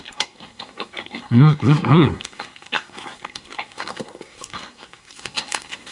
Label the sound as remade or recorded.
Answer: remade